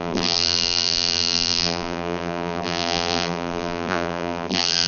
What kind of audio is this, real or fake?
fake